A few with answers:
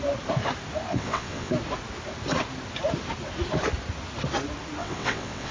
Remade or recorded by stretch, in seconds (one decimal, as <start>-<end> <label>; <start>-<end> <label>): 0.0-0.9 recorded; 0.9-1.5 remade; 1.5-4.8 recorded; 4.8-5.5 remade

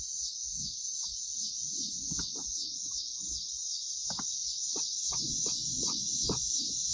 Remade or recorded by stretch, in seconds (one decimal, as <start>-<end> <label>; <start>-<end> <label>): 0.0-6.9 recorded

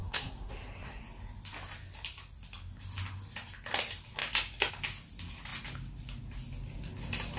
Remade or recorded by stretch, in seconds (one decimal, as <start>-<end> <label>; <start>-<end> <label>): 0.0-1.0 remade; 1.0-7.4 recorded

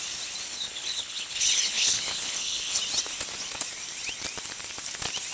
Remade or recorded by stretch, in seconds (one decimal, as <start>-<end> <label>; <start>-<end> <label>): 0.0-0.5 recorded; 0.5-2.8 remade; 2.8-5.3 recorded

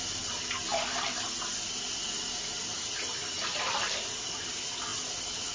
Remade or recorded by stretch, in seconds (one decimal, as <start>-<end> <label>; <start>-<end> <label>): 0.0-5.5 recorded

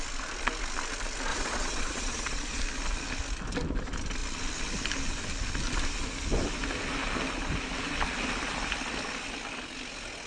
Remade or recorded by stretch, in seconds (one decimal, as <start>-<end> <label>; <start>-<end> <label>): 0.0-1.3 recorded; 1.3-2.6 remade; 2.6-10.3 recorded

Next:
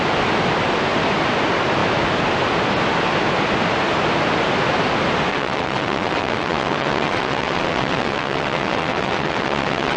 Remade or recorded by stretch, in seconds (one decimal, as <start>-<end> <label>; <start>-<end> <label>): 0.0-5.3 recorded; 5.3-10.0 remade